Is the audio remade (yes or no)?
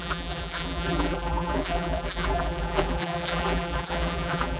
yes